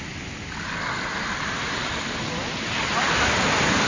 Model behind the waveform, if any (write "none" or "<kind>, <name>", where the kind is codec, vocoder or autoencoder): none